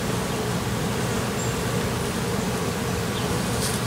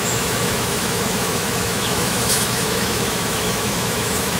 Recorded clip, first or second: first